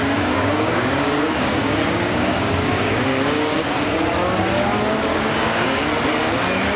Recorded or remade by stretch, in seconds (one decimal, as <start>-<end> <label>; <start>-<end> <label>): 0.0-3.6 remade; 3.6-5.1 recorded; 5.1-5.8 remade; 5.8-6.8 recorded